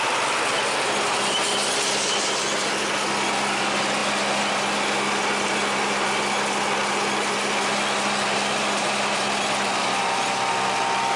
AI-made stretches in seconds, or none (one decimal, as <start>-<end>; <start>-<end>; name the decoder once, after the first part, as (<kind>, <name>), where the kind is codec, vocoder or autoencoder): none